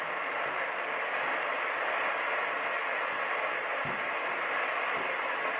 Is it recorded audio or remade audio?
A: remade